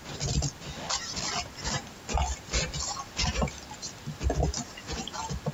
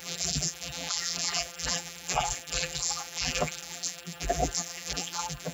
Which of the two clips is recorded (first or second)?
first